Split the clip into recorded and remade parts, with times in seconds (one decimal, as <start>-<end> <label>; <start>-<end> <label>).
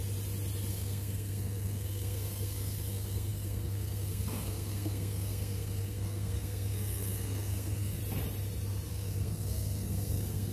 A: 0.0-0.7 recorded; 0.7-8.0 remade; 8.0-8.9 recorded; 8.9-10.5 remade